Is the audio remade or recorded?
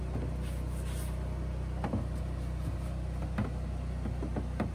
recorded